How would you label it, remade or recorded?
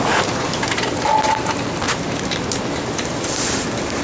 recorded